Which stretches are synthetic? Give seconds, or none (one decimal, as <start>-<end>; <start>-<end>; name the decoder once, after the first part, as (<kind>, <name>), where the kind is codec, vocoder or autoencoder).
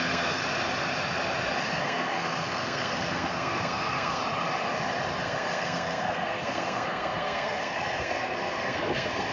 0.0-0.4 (codec, SNAC); 1.7-4.2; 5.2-9.3